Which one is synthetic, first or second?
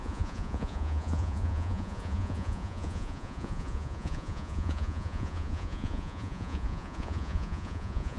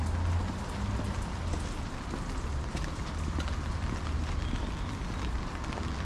first